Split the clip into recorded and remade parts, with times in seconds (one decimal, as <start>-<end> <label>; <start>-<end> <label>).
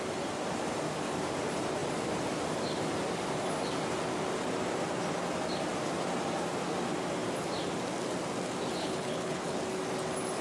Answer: 0.0-8.8 recorded; 8.8-9.6 remade; 9.6-10.4 recorded